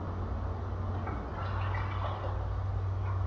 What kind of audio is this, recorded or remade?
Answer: recorded